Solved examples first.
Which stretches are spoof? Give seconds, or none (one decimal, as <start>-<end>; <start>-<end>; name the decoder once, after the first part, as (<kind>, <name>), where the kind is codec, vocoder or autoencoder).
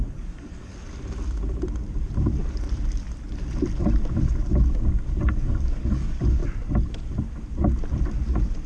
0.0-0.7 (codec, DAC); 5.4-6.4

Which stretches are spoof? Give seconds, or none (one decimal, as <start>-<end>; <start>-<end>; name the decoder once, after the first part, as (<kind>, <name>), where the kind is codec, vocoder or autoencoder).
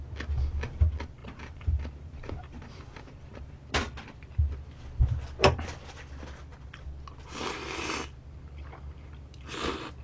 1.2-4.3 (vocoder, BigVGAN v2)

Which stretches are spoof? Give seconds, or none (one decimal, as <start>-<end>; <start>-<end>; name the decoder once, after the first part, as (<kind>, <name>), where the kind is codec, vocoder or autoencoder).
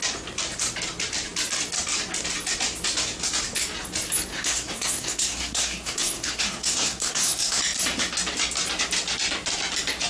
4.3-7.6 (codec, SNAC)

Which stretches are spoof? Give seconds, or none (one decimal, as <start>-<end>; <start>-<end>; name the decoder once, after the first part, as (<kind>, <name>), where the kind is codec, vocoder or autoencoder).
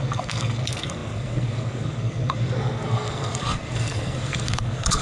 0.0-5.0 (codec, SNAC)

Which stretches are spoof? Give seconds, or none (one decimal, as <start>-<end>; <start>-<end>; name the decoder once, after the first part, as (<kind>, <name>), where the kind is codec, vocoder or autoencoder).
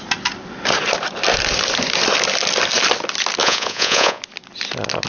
3.4-4.2 (vocoder, Vocos)